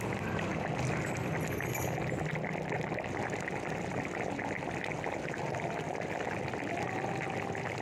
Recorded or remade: recorded